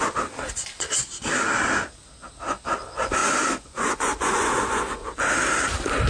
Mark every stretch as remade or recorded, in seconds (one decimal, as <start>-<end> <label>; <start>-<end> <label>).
0.0-3.2 recorded; 3.2-5.3 remade; 5.3-6.1 recorded